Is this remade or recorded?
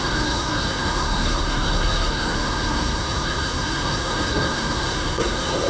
remade